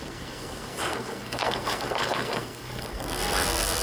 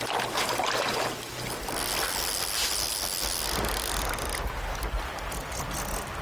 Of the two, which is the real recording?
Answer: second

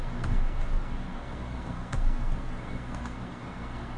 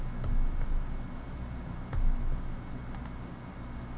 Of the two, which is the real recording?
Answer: second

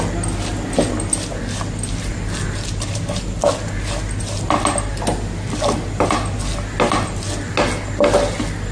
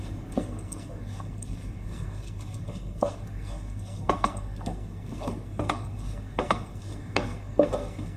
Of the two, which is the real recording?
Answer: first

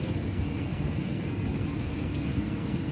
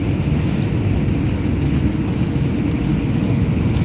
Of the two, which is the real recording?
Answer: second